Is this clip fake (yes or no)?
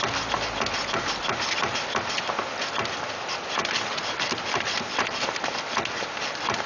no